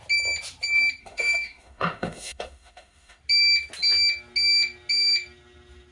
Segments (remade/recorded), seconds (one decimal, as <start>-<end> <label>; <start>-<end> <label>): 0.0-1.0 recorded; 1.0-3.2 remade; 3.2-5.9 recorded